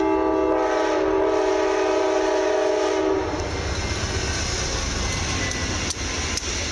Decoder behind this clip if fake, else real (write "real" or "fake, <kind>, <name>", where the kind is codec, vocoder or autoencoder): real